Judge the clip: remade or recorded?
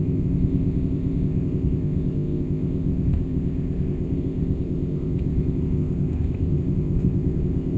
remade